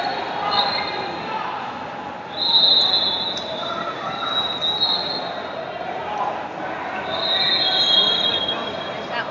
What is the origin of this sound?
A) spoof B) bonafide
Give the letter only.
B